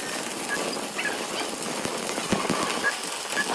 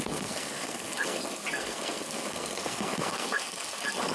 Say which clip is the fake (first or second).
second